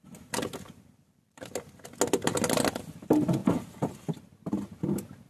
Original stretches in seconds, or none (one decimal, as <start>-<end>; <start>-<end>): 0.0-5.3

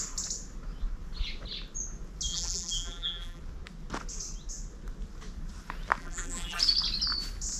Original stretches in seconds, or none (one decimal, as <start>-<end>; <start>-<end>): 0.0-2.3; 3.4-6.0; 6.6-7.6

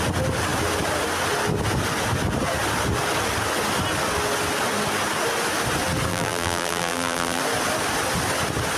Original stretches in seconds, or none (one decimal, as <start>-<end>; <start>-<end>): 0.0-6.1; 7.4-8.8

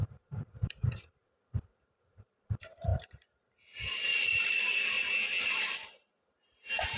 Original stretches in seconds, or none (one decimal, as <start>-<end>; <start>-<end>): 4.1-5.4

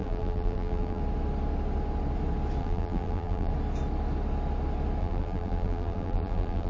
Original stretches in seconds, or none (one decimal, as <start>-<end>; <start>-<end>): 1.0-2.6; 3.5-5.0